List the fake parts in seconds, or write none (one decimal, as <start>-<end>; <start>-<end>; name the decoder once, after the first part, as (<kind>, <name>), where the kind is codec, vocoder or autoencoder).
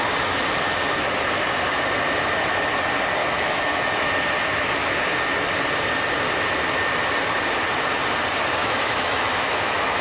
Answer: 3.2-4.1 (autoencoder, DAC-VAE); 8.6-10.0